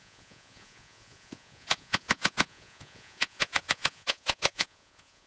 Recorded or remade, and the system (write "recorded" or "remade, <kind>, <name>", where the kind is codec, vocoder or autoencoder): remade, vocoder, Vocos